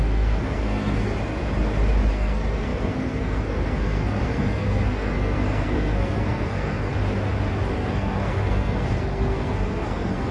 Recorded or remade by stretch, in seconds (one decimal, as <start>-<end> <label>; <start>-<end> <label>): 0.0-1.1 remade; 1.1-2.1 recorded; 2.1-6.9 remade; 6.9-7.7 recorded; 7.7-10.3 remade